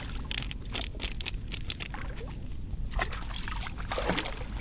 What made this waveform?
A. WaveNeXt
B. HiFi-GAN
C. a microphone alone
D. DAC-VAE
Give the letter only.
C